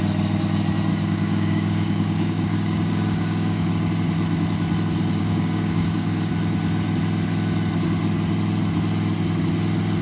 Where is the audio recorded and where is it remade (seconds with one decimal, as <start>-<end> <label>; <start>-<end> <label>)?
0.0-0.9 recorded; 0.9-3.7 remade; 3.7-5.2 recorded; 5.2-6.3 remade; 6.3-10.0 recorded